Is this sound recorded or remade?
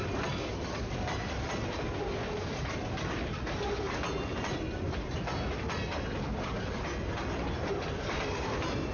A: recorded